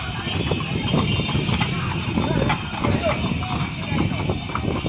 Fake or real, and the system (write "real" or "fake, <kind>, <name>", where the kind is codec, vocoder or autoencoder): real